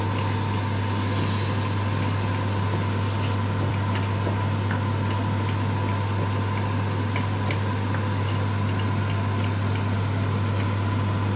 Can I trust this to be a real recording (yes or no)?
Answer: yes